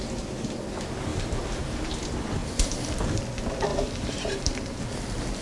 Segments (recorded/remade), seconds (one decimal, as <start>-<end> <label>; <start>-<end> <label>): 0.0-1.1 recorded; 1.1-2.0 remade; 2.0-2.4 recorded; 2.4-3.2 remade; 3.2-3.7 recorded; 3.7-4.8 remade; 4.8-5.4 recorded